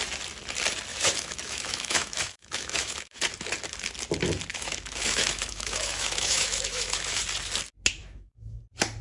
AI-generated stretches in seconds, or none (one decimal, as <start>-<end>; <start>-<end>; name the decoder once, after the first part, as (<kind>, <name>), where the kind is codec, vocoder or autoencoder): 0.9-3.2 (autoencoder, DAC-VAE); 4.5-7.2; 8.0-8.6